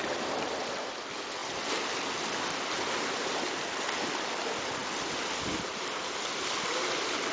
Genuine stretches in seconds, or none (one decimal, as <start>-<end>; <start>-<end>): 0.0-7.3